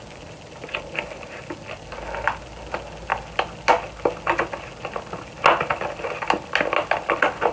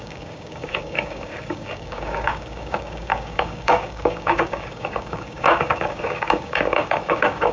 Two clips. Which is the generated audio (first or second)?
second